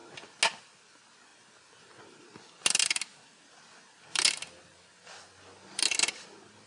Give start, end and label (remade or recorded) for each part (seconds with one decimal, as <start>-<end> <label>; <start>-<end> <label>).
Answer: 0.0-6.7 recorded

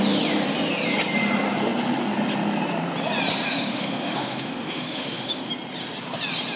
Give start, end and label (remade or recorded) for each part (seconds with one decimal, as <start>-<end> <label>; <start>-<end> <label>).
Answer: 0.0-3.5 recorded; 3.5-5.5 remade; 5.5-6.6 recorded

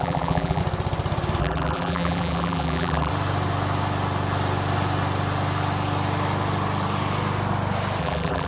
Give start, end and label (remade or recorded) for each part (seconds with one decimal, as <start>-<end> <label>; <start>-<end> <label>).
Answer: 0.0-0.6 remade; 0.6-1.4 recorded; 1.4-3.1 remade; 3.1-8.0 recorded; 8.0-8.5 remade

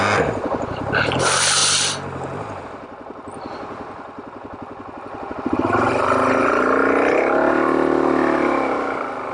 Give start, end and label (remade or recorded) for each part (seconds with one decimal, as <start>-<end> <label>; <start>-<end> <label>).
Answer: 0.0-9.3 recorded